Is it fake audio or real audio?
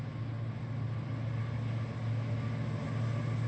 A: real